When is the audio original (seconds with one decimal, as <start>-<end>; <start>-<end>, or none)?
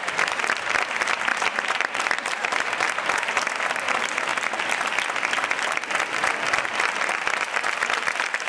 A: 0.0-1.3; 2.5-8.5